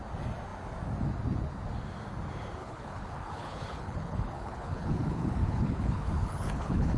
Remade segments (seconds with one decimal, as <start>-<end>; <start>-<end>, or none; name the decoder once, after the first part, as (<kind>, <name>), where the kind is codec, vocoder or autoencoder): 2.6-7.0 (codec, HILCodec)